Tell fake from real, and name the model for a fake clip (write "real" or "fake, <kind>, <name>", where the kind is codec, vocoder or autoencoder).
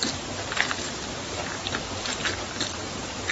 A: real